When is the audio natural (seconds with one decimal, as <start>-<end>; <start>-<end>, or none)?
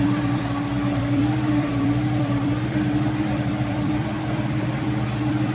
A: none